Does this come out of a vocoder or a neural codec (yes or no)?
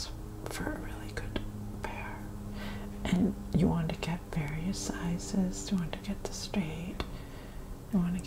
no